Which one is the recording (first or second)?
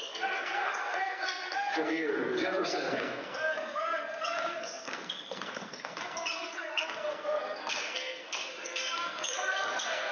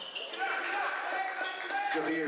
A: second